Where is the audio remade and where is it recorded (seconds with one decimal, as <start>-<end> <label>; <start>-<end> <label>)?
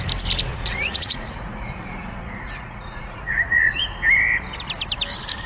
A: 0.0-0.5 recorded; 0.5-3.8 remade; 3.8-5.5 recorded